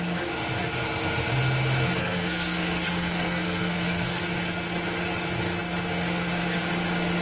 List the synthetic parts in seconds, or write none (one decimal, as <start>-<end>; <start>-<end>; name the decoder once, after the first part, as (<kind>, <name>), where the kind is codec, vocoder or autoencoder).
2.0-4.2 (codec, SNAC)